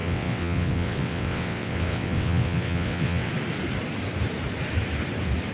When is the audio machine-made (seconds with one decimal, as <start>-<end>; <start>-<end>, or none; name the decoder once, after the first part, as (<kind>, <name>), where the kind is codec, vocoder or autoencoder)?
0.0-3.3 (vocoder, WaveNeXt)